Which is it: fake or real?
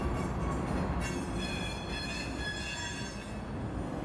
real